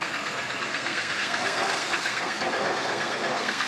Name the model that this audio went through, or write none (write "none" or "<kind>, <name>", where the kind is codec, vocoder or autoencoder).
codec, SNAC